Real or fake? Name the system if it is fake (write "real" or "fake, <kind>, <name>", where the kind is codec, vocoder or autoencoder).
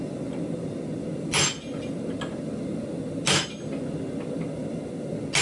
real